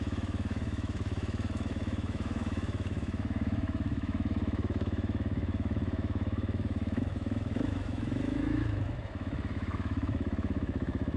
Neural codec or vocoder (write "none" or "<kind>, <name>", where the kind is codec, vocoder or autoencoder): autoencoder, DAC-VAE